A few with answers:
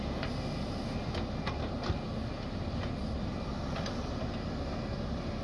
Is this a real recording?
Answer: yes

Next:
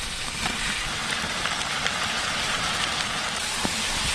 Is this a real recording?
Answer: no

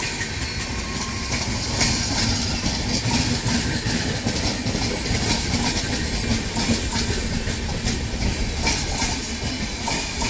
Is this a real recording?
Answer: yes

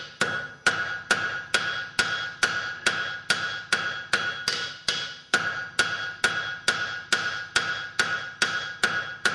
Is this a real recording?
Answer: yes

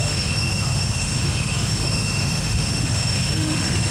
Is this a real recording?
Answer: no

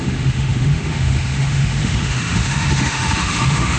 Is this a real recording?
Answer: no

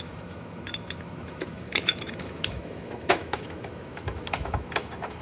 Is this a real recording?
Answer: no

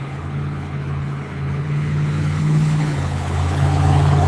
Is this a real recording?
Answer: no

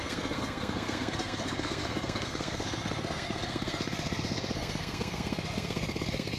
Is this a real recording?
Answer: no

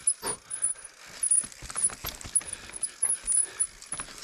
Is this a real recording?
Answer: yes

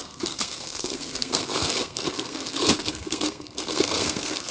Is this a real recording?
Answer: no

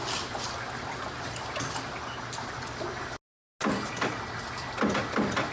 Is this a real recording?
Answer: yes